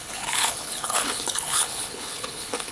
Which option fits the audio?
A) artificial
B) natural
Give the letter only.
A